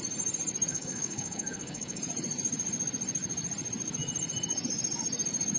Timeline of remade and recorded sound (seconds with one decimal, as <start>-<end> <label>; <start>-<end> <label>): 0.0-0.7 recorded; 0.7-2.0 remade; 2.0-5.6 recorded